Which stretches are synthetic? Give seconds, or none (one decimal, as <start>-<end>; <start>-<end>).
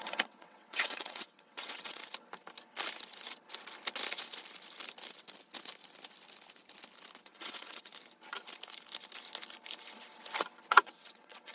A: 0.0-2.0; 7.2-7.9; 10.7-11.5